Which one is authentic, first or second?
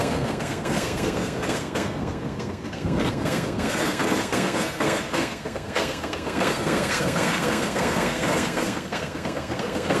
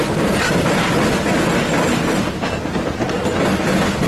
second